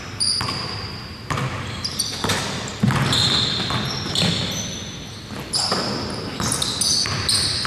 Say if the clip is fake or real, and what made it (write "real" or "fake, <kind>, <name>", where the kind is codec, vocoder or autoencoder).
real